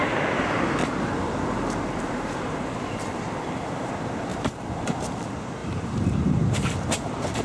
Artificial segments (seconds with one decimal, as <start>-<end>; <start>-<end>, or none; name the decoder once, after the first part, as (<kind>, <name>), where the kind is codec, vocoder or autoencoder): 0.8-3.9 (vocoder, BigVGAN v2); 4.3-5.0; 5.6-6.4